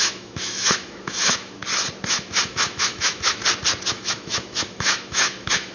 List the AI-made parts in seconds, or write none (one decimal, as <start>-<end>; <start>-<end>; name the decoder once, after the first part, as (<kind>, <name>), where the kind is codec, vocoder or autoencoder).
0.0-1.6 (autoencoder, DAC-VAE); 2.1-3.4; 3.9-5.7